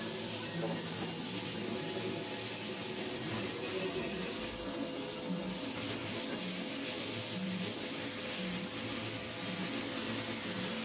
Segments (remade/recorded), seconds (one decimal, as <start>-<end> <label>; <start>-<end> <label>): 0.0-10.8 recorded